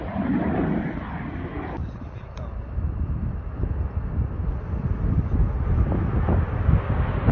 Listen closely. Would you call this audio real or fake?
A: real